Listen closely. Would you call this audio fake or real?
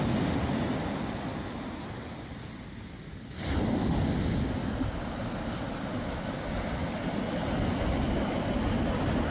real